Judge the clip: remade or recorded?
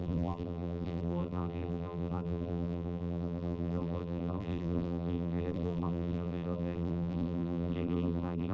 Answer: remade